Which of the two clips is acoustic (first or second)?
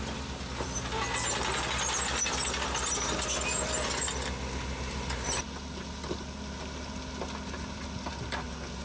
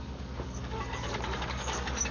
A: first